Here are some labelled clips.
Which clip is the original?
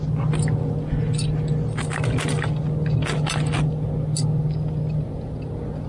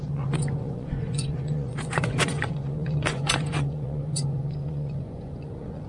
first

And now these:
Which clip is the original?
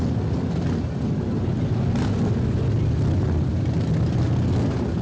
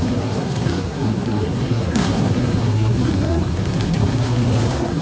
first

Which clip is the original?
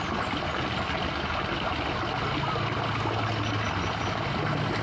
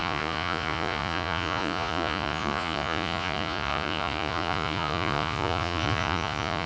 first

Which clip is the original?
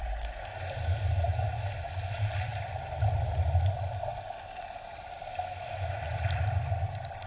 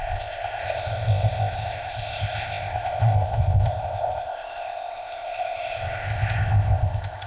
first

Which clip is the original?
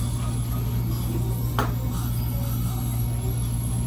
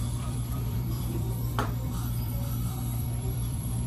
first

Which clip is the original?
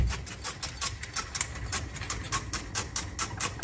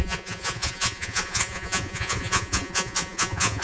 first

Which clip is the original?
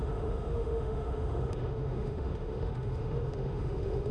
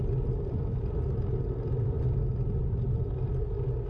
second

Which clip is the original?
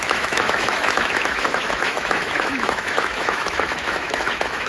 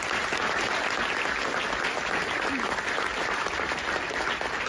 second